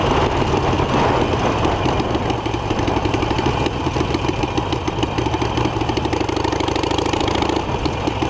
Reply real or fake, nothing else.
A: real